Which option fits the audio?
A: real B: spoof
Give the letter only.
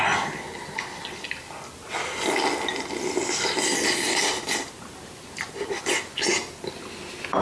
A